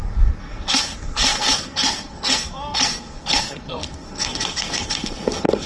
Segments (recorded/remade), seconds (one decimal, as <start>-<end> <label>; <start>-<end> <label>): 0.0-5.7 remade

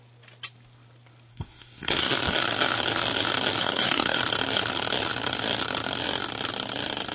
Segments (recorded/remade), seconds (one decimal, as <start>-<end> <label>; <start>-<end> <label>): 0.0-1.3 recorded; 1.3-2.1 remade; 2.1-3.6 recorded; 3.6-4.2 remade; 4.2-7.1 recorded

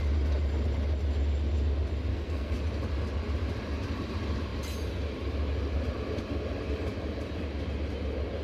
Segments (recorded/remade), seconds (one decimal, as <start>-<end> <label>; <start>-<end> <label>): 0.0-2.1 recorded; 2.1-2.6 remade; 2.6-8.4 recorded

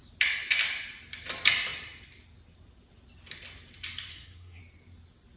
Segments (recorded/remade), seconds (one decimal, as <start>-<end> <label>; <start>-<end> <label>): 0.0-4.1 recorded; 4.1-4.6 remade; 4.6-5.4 recorded

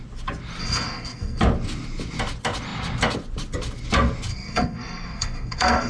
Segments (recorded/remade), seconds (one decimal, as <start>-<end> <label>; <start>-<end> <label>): 0.0-0.6 recorded; 0.6-1.4 remade; 1.4-4.3 recorded; 4.3-5.9 remade

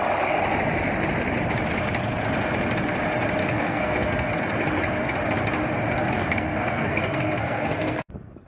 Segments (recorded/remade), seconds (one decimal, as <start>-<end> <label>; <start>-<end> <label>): 0.0-3.4 recorded; 3.4-4.3 remade; 4.3-6.2 recorded; 6.2-8.1 remade; 8.1-8.5 recorded